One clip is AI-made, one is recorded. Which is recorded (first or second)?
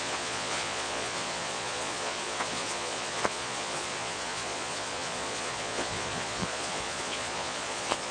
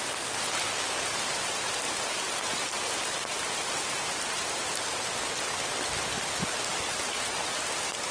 second